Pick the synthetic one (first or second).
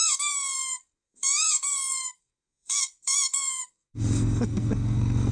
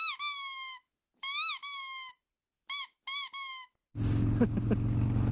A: first